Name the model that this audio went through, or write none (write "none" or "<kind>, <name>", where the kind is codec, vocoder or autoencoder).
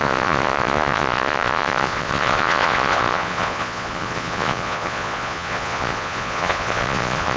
vocoder, Vocos